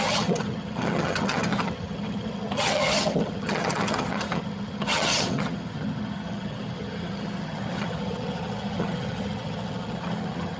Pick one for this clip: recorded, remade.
remade